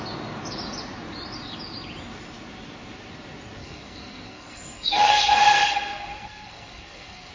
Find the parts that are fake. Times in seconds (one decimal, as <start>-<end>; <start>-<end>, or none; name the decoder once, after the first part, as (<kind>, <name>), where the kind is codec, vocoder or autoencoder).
3.6-7.3 (codec, SNAC)